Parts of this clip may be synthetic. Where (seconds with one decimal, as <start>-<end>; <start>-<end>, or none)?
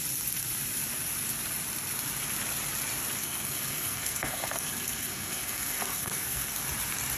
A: 3.2-6.6